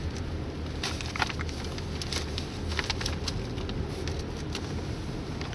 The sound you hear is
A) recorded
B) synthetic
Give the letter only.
A